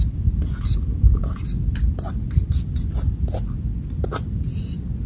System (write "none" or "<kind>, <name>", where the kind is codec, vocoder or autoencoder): none